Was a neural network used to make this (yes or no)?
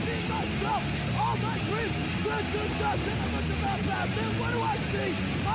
no